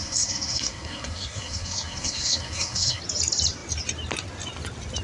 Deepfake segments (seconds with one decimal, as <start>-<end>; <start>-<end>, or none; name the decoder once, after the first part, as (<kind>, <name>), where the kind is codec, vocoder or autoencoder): 0.0-3.0 (codec, SNAC)